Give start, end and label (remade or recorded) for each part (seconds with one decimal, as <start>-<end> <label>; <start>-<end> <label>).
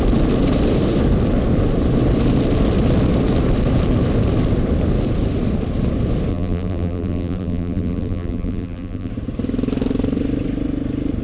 0.0-6.3 recorded; 6.3-9.1 remade; 9.1-11.2 recorded